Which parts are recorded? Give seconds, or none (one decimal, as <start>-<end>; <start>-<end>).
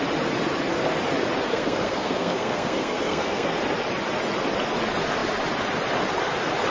0.0-1.5; 3.6-6.7